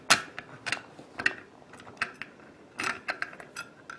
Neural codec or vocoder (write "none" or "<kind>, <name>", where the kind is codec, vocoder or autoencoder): none